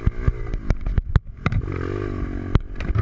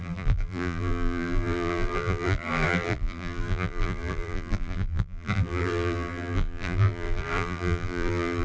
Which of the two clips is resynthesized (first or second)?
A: second